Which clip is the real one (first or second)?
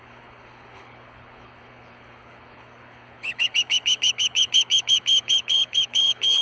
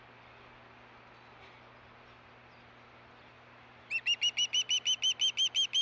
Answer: second